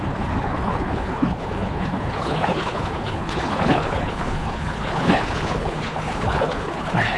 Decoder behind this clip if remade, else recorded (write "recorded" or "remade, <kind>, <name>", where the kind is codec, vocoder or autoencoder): remade, codec, HILCodec